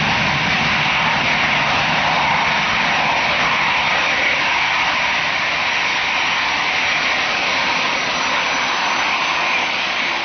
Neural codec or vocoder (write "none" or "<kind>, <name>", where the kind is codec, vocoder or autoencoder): none